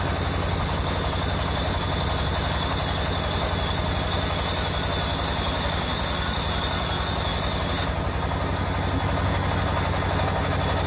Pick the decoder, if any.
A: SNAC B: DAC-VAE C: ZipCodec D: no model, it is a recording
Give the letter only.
D